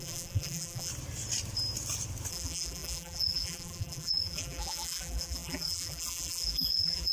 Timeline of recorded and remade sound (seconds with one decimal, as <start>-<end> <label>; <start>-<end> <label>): 0.0-0.9 remade; 0.9-2.3 recorded; 2.3-7.1 remade